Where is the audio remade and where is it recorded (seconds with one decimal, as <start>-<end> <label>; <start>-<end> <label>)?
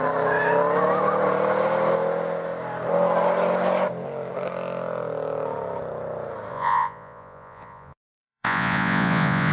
0.0-6.5 recorded; 6.5-9.5 remade